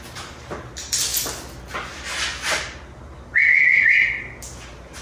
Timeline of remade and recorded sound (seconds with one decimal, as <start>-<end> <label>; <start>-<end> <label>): 0.0-5.0 recorded